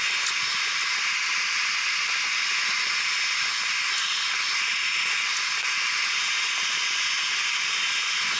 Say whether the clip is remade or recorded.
recorded